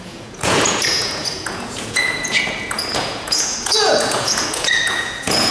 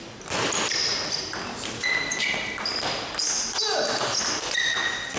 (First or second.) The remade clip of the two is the first